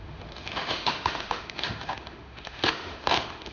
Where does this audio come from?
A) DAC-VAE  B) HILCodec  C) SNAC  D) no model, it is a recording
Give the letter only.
A